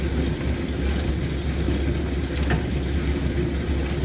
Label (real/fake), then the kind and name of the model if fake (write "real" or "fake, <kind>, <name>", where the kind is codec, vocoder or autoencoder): real